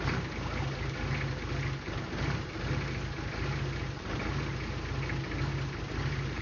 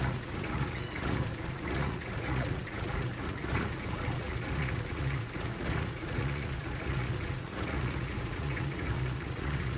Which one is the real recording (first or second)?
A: first